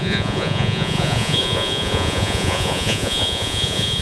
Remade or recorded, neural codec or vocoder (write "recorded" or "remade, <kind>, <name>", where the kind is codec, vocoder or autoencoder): remade, vocoder, Vocos